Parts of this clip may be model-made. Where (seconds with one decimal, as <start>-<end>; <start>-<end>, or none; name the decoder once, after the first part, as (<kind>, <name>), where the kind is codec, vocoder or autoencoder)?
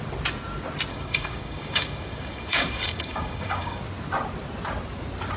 0.9-3.8 (codec, DAC)